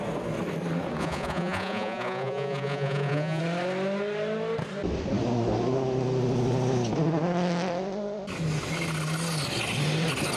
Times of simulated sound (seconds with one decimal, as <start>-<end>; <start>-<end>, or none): 1.0-3.4